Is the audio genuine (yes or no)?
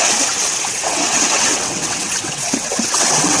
no